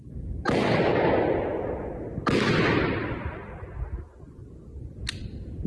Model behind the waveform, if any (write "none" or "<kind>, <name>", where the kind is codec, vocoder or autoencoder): none